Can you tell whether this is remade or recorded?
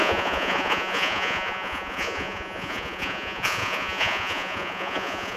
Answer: remade